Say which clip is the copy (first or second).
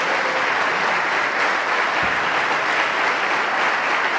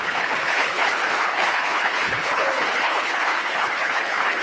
second